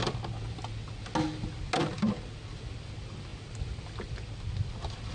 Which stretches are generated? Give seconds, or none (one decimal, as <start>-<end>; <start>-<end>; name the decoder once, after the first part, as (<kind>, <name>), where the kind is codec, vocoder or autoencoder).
none